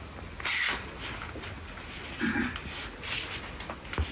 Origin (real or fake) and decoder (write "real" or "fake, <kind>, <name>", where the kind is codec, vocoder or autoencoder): real